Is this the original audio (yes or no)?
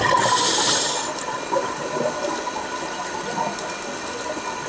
yes